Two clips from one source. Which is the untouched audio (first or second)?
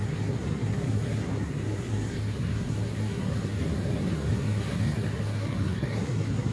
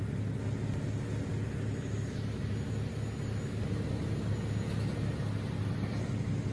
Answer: second